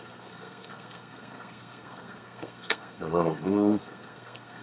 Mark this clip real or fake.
fake